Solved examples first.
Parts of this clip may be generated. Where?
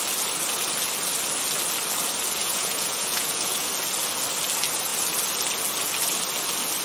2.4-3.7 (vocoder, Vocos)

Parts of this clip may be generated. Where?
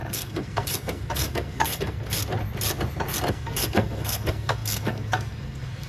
0.0-2.2 (codec, SNAC); 3.3-5.9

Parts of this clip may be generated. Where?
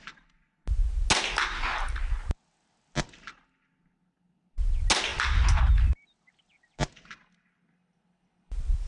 none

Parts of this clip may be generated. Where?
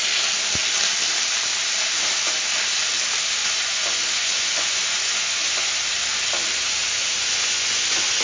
3.4-5.7 (vocoder, Vocos); 6.8-8.2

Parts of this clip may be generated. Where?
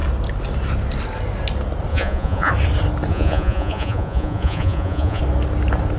1.9-2.5 (vocoder, Vocos); 3.1-5.2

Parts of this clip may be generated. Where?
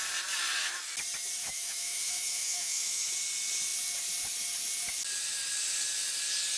1.4-3.1 (autoencoder, DAC-VAE)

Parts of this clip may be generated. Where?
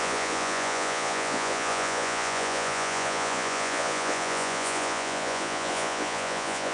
0.0-6.7 (vocoder, Vocos)